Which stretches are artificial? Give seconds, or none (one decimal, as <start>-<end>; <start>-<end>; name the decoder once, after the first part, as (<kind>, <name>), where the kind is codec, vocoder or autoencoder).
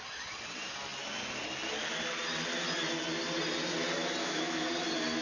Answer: 4.2-4.7 (autoencoder, DAC-VAE)